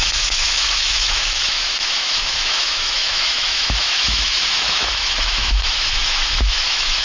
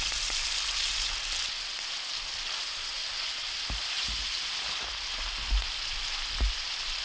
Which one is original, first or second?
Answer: second